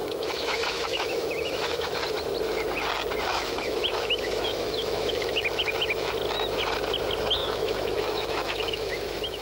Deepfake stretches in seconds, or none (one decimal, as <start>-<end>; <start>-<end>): 0.0-2.0; 3.3-6.1; 7.4-9.4